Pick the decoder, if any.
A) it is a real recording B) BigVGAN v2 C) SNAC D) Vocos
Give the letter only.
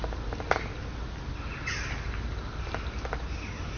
A